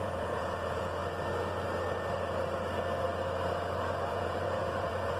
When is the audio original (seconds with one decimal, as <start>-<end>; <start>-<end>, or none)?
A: 1.0-4.1